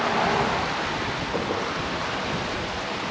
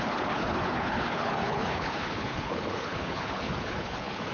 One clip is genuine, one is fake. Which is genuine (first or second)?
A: first